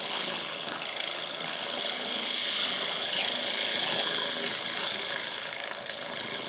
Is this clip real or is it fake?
fake